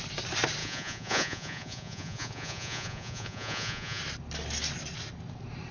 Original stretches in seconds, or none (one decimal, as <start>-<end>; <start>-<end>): 0.0-0.6; 4.0-5.7